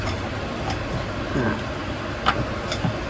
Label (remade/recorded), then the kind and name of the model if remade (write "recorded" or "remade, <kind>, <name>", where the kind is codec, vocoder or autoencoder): recorded